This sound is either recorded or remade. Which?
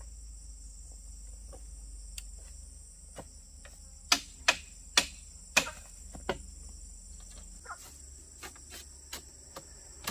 recorded